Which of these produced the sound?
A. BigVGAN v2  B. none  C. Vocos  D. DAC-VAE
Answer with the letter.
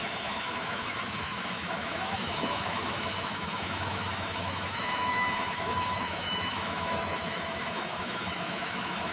D